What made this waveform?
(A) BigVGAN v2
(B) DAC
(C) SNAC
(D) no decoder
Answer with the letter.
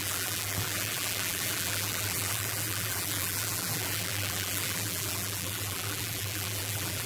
A